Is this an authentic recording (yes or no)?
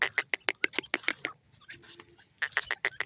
yes